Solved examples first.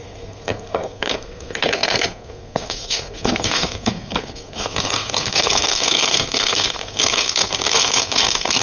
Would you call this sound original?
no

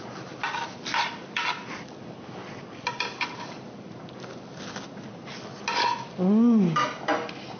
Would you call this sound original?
yes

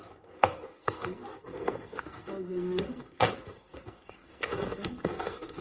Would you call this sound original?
no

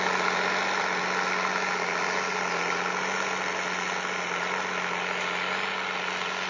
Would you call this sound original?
yes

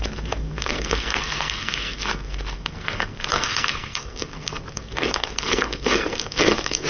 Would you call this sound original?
no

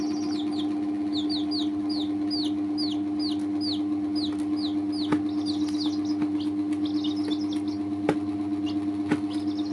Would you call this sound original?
yes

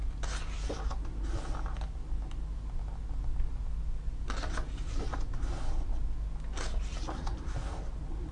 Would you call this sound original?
yes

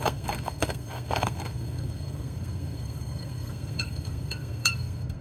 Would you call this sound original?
no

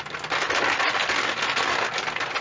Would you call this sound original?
yes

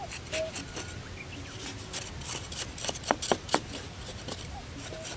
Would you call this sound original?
yes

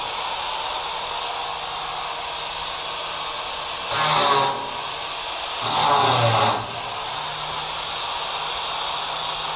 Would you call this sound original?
yes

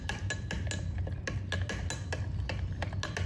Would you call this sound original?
yes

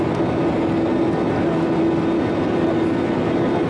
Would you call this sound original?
yes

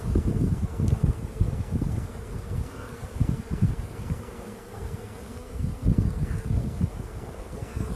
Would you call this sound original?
no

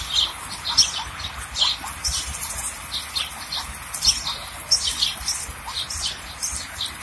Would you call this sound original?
yes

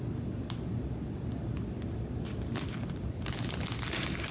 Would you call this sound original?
yes